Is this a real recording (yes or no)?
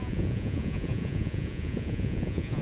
no